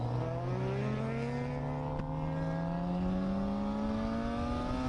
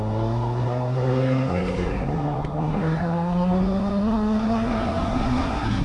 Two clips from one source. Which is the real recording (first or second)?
first